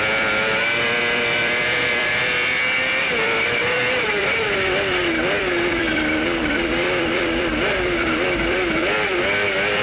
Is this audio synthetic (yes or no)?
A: yes